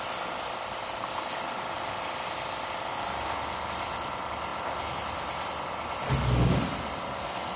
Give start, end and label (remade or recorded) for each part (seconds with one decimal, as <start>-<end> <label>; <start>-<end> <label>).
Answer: 0.0-7.6 recorded